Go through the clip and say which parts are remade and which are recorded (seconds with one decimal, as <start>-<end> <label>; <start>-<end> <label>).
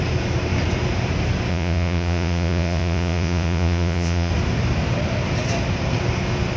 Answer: 0.0-1.5 recorded; 1.5-4.3 remade; 4.3-6.6 recorded